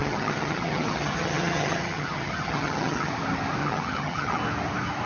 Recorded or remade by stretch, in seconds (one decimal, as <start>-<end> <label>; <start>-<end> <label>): 0.0-3.1 remade; 3.1-3.6 recorded; 3.6-4.4 remade; 4.4-5.1 recorded